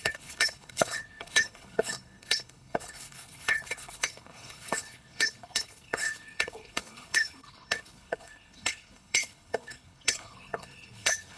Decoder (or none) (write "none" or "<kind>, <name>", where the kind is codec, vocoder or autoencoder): codec, HILCodec